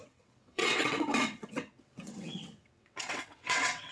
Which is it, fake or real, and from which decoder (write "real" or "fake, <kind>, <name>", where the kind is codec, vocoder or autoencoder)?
fake, vocoder, WaveNeXt